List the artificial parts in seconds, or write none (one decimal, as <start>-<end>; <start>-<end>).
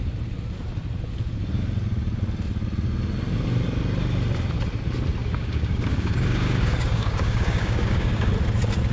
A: 5.2-8.3